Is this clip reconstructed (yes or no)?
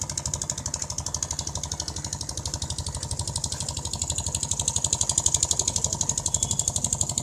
no